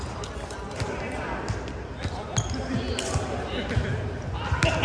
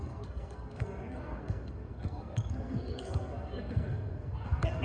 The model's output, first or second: second